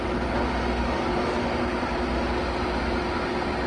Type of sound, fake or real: real